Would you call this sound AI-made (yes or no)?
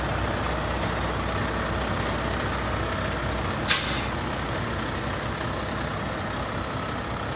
no